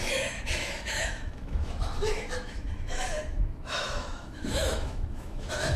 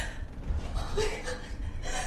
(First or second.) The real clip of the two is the second